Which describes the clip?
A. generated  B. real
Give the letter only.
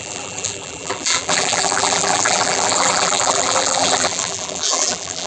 A